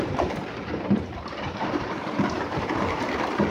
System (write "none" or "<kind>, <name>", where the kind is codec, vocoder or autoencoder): vocoder, BigVGAN v2